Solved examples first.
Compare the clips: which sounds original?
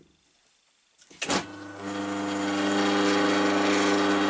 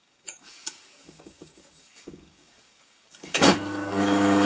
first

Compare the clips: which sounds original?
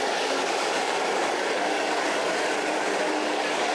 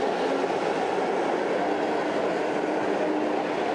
second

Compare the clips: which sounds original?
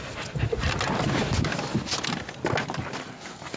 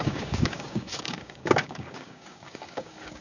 first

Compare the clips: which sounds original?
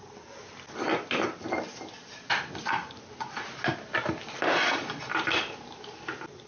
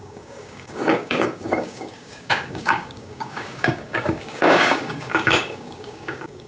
first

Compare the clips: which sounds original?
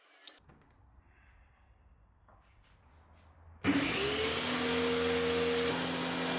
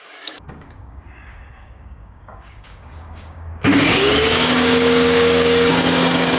first